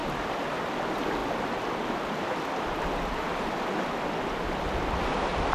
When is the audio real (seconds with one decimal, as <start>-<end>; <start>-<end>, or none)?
0.6-5.5